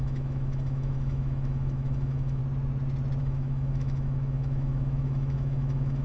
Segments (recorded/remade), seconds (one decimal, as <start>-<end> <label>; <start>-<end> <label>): 0.0-2.4 remade; 2.4-3.2 recorded; 3.2-6.0 remade